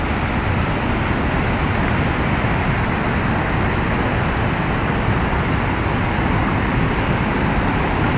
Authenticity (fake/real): real